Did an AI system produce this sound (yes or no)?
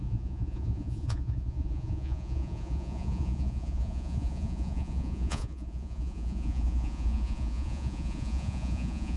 yes